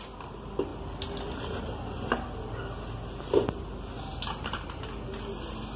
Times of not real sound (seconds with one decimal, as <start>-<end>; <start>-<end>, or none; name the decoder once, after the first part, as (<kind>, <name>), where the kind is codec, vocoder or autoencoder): 4.1-5.1 (vocoder, BigVGAN v2)